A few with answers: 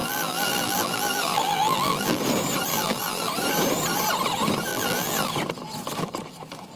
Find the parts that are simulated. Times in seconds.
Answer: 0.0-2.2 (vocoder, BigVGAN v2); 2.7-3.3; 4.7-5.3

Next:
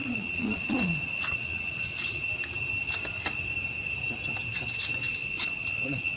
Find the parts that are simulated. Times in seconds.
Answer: 0.0-2.2 (vocoder, Vocos); 5.2-6.2

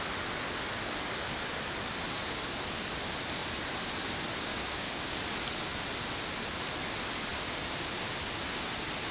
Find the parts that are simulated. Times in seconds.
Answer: 4.5-5.1 (codec, DAC)

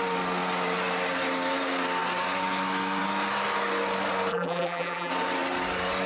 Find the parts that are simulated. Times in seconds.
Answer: 4.3-5.1 (vocoder, BigVGAN v2)